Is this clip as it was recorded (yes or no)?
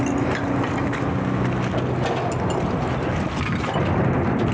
yes